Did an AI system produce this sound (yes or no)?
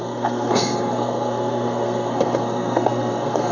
yes